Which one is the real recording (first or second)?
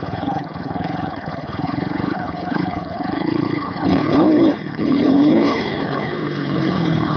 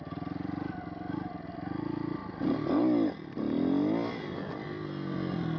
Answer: second